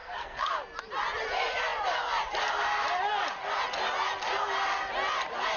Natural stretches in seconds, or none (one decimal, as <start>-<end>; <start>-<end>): 0.5-5.6